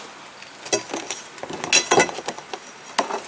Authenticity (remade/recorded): recorded